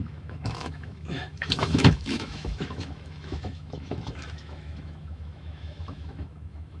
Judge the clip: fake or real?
fake